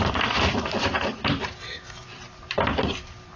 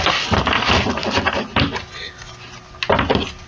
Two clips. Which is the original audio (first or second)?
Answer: second